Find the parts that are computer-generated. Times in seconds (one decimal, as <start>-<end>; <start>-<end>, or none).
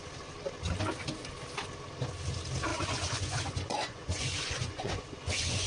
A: 2.7-5.7